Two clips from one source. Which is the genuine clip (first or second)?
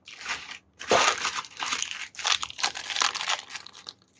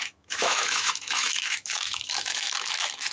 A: first